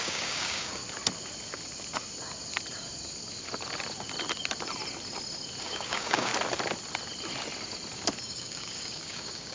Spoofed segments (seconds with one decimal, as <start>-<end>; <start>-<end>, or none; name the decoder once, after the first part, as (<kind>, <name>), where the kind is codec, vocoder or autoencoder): 0.0-0.8 (codec, DAC); 5.6-6.3; 8.2-9.5